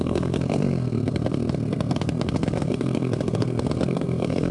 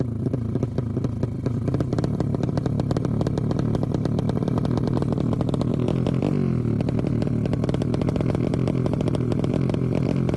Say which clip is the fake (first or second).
first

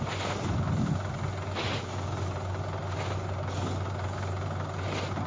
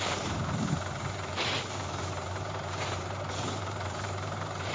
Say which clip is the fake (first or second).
second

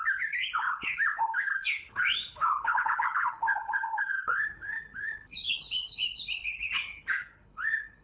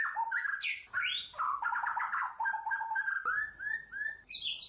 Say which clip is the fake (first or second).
first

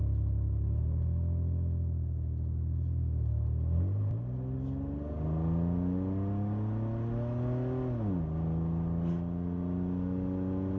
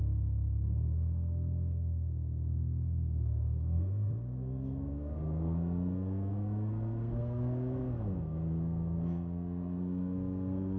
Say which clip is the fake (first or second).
second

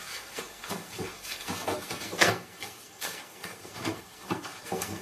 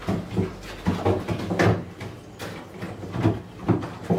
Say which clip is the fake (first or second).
first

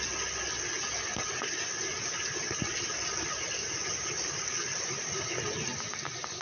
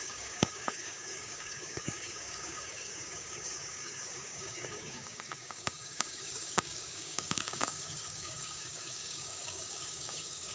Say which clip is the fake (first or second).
second